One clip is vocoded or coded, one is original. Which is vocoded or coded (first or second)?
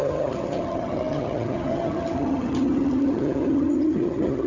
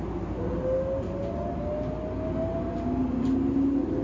first